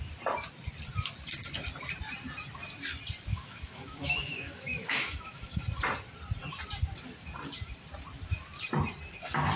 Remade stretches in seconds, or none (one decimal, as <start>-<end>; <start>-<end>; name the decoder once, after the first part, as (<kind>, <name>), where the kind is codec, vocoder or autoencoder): 3.3-5.6 (autoencoder, DAC-VAE)